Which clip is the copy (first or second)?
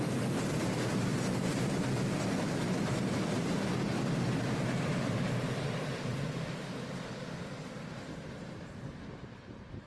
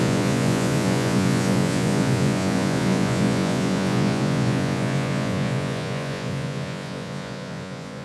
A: second